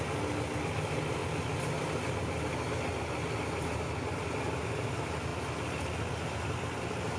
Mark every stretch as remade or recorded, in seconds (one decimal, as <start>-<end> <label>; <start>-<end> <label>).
0.0-7.2 recorded